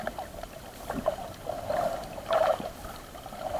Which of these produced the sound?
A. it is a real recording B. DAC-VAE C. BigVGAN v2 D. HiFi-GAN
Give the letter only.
C